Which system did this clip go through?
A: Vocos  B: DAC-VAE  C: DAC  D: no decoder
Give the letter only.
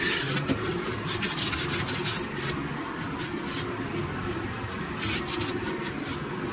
D